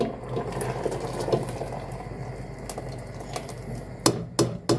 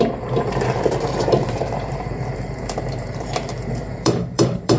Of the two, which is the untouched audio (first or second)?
first